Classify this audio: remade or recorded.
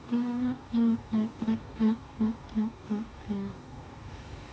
remade